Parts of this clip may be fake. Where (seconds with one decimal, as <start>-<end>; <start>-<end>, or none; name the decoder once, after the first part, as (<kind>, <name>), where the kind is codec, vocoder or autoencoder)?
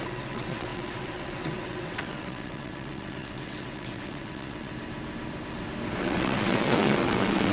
0.0-4.7 (vocoder, WaveNeXt); 6.0-7.5